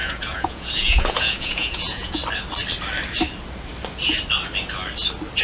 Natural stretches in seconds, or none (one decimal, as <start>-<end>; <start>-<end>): 2.2-5.4